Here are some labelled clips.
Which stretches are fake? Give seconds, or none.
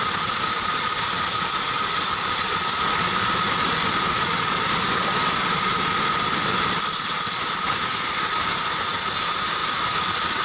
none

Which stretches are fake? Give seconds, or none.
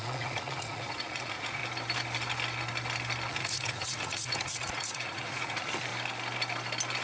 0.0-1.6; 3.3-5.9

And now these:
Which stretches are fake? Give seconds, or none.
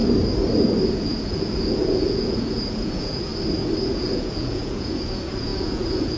0.9-3.3; 3.8-6.2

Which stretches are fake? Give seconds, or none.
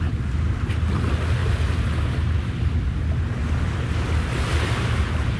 none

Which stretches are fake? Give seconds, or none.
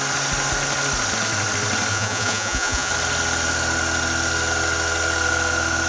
1.9-2.9